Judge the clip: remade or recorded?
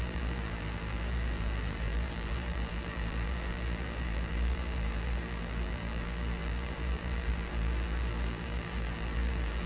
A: remade